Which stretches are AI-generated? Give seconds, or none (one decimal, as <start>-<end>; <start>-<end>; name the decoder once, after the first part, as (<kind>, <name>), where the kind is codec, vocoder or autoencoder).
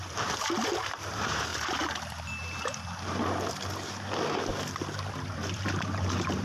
0.0-1.5 (vocoder, BigVGAN v2); 5.3-6.4